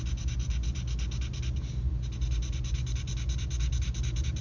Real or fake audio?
real